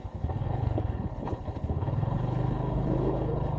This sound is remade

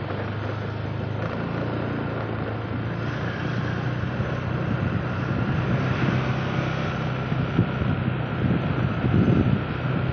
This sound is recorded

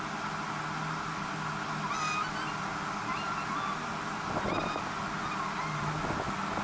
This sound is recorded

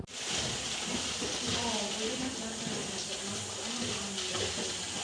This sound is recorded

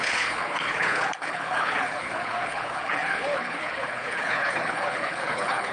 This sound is remade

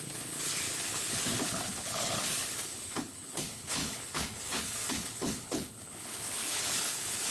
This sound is remade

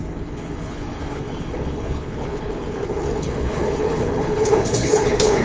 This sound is remade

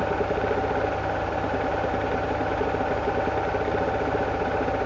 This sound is recorded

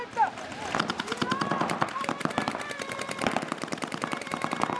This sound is recorded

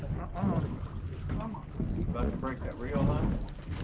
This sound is recorded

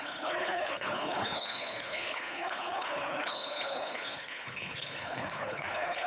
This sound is remade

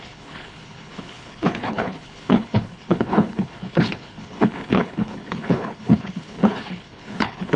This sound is remade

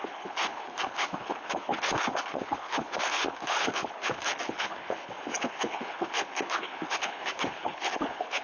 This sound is remade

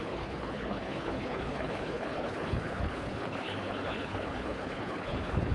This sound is remade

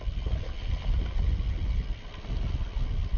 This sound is recorded